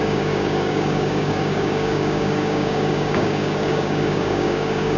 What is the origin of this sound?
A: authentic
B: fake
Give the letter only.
B